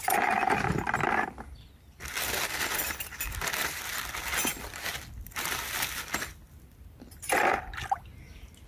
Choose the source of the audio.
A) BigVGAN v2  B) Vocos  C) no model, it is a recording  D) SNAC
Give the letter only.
C